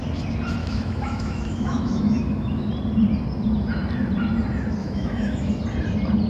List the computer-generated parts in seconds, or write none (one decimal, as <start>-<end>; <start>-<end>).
0.6-2.7; 4.8-5.5